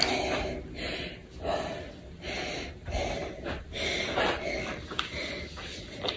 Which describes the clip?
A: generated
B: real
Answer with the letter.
B